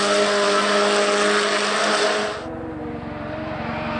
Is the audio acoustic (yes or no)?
yes